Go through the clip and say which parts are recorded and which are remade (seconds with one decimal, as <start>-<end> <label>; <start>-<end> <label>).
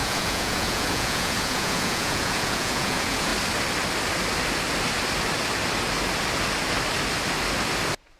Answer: 0.0-3.3 remade; 3.3-8.2 recorded